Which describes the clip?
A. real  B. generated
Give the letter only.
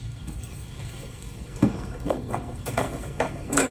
B